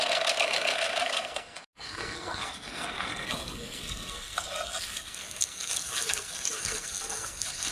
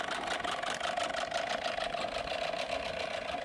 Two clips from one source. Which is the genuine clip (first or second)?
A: second